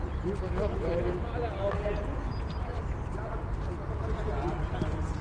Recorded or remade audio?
recorded